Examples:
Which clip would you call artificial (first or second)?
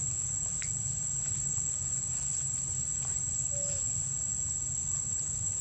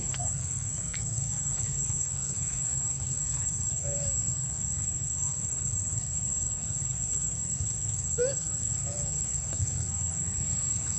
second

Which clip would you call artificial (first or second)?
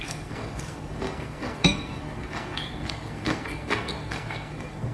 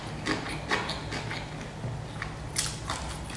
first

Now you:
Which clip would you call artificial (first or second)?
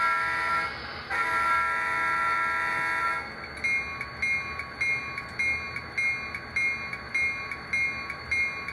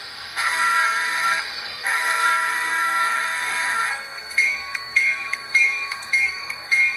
second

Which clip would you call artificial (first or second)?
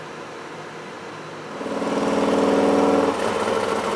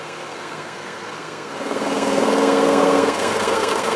second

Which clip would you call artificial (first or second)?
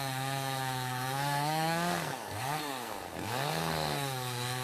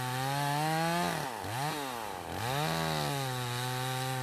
first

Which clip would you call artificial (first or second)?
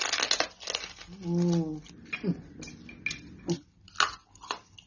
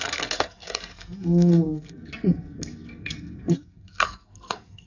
second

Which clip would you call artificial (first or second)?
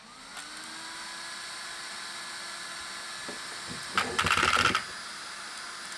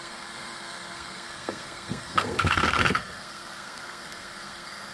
second